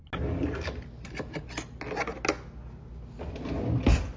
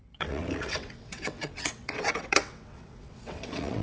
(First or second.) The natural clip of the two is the first